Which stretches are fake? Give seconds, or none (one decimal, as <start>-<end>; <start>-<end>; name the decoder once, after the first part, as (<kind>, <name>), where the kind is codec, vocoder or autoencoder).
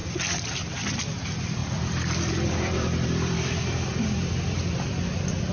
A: 1.6-4.9 (vocoder, BigVGAN v2)